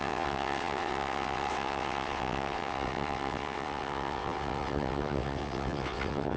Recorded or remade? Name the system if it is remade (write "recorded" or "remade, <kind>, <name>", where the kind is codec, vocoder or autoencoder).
remade, vocoder, WaveNeXt